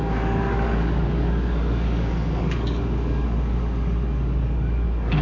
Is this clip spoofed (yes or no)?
yes